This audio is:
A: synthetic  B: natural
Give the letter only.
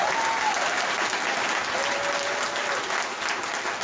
B